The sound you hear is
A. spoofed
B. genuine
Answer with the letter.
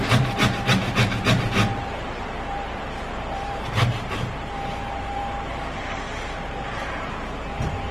A